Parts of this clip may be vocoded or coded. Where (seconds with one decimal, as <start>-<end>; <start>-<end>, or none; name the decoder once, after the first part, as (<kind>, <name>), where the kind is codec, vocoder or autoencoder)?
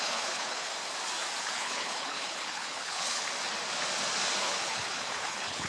0.0-0.7 (codec, HILCodec); 1.4-3.2; 4.4-5.7